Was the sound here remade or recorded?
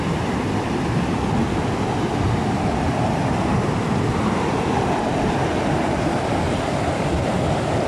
remade